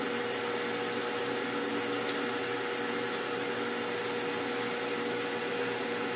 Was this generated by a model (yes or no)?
no